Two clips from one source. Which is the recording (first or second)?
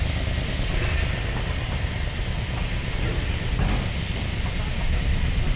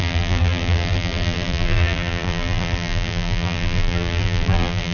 first